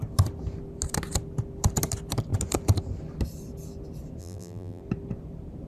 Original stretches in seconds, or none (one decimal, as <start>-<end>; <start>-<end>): 0.0-4.2; 4.8-5.7